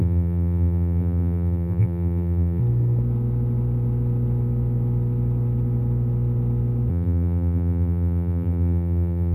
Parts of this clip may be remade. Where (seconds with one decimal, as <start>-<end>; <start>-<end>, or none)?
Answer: 0.0-2.6; 6.9-9.3